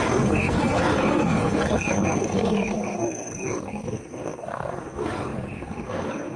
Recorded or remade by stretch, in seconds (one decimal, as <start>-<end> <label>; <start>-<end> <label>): 0.0-6.4 remade